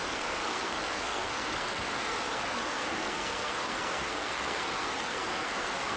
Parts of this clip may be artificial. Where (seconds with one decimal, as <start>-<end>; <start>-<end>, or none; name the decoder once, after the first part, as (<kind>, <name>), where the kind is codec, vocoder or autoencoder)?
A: 0.0-6.0 (codec, SNAC)